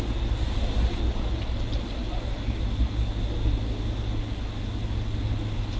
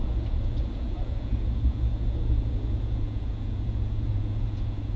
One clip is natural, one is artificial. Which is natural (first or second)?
first